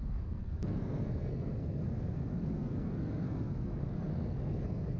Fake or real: fake